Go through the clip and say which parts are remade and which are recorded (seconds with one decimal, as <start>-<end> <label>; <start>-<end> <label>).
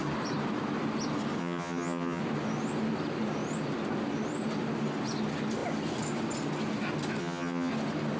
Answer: 0.0-1.4 recorded; 1.4-2.2 remade; 2.2-7.2 recorded; 7.2-7.7 remade; 7.7-8.2 recorded